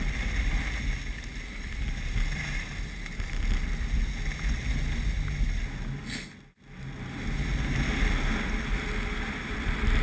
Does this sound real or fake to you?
real